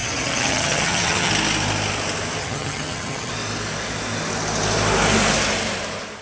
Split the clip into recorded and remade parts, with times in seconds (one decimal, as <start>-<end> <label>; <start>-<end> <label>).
0.0-1.3 remade; 1.3-2.4 recorded; 2.4-3.3 remade; 3.3-6.2 recorded